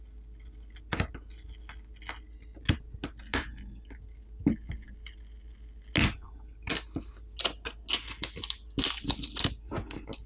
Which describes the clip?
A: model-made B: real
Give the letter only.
B